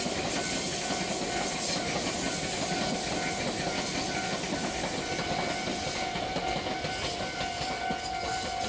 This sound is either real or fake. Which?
real